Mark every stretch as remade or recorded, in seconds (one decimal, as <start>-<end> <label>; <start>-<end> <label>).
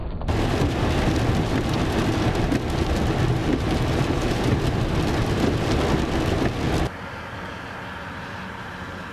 0.0-0.9 remade; 0.9-3.4 recorded; 3.4-4.6 remade; 4.6-9.1 recorded